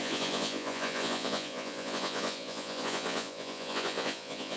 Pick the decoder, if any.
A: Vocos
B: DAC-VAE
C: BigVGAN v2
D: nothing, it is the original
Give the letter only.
A